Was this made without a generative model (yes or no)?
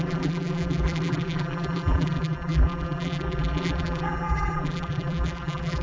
no